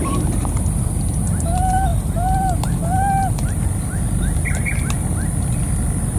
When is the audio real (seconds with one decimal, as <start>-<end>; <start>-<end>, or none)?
0.0-1.9; 5.4-6.2